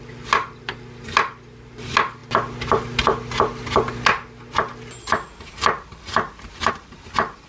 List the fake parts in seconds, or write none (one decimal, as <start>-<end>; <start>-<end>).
none